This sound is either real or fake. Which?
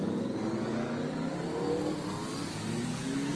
real